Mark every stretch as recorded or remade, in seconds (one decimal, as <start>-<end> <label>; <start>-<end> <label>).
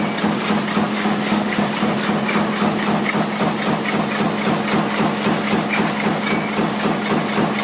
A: 0.0-0.9 recorded; 0.9-1.6 remade; 1.6-7.6 recorded